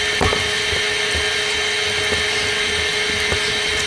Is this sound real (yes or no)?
yes